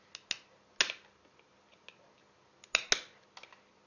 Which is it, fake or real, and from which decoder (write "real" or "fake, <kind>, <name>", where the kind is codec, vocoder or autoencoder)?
real